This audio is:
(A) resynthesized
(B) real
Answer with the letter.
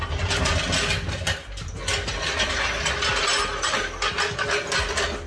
B